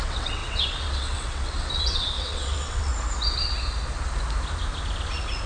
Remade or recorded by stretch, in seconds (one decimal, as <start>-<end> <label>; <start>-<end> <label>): 0.0-2.9 remade; 2.9-5.5 recorded